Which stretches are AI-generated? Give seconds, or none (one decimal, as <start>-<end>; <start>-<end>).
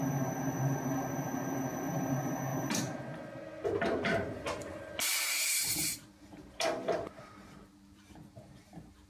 0.0-9.1